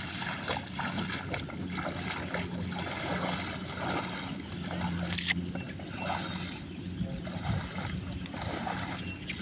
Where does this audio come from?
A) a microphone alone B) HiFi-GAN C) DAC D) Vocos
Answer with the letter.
A